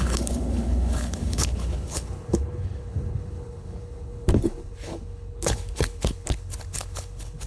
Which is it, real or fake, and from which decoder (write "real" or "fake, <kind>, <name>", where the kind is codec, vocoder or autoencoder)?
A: fake, codec, HILCodec